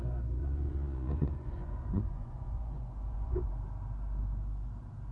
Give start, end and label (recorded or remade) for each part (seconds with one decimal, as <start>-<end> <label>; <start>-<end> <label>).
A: 0.0-0.4 recorded; 0.4-3.5 remade; 3.5-5.1 recorded